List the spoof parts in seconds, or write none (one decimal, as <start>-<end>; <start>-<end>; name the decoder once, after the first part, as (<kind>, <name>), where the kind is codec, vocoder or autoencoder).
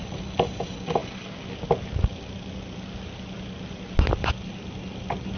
none